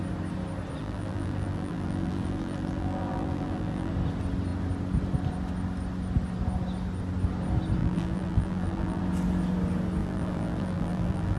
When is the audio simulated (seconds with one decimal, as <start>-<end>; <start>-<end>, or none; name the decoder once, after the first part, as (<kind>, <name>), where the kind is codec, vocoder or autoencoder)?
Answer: 0.8-3.9 (vocoder, BigVGAN v2); 7.8-9.0; 10.0-11.4